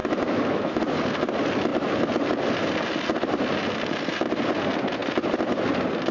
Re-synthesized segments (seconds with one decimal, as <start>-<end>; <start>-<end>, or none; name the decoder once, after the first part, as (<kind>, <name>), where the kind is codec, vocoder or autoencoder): 0.0-0.8 (autoencoder, DAC-VAE)